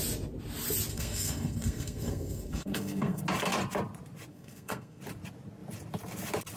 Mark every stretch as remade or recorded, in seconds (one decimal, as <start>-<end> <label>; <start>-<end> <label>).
0.0-0.9 recorded; 0.9-3.2 remade; 3.2-4.3 recorded; 4.3-5.0 remade; 5.0-6.6 recorded